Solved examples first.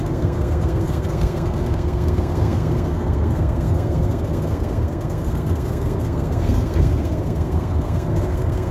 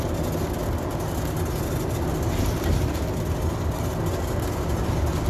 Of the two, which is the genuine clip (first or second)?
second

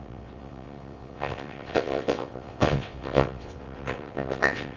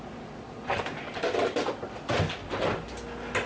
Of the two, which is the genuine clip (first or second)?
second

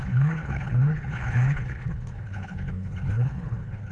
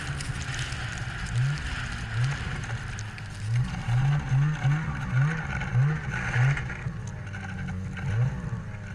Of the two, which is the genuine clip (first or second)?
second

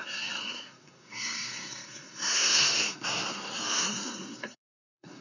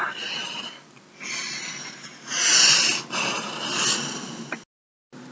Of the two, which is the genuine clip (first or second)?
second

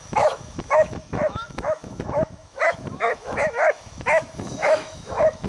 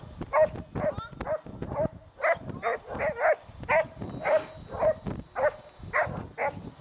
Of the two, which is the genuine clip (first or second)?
second